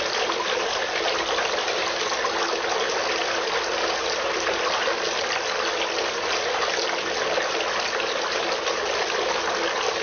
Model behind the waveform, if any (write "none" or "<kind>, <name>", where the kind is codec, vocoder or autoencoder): none